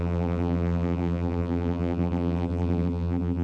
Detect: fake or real fake